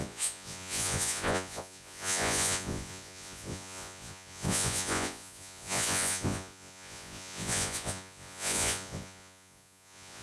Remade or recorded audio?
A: remade